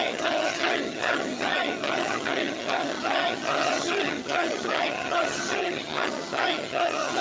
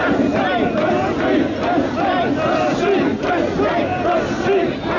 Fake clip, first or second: first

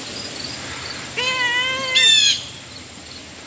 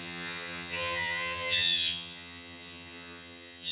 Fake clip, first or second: second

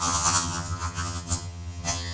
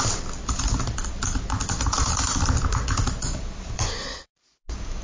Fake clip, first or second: first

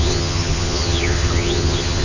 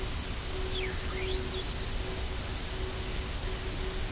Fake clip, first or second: first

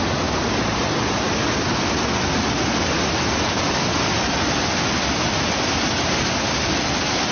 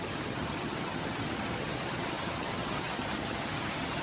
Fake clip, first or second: second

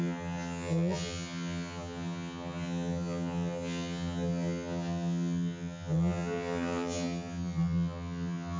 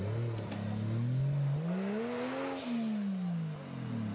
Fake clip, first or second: first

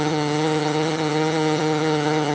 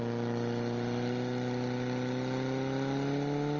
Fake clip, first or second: first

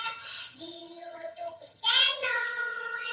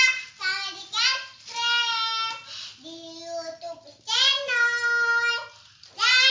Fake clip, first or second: first